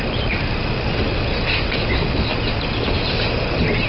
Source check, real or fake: real